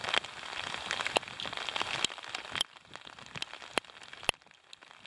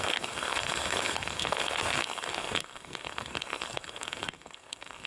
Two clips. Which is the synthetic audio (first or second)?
second